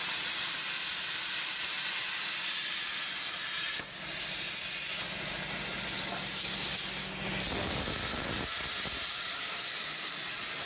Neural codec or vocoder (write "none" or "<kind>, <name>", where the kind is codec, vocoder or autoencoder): none